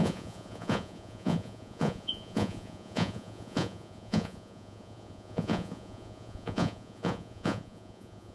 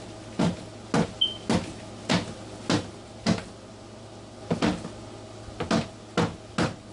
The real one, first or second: second